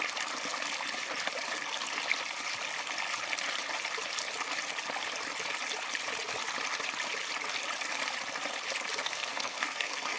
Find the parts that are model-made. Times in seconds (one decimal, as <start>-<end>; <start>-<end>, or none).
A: 9.0-10.2